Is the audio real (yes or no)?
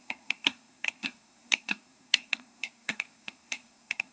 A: no